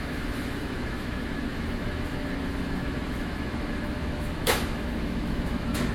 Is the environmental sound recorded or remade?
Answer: remade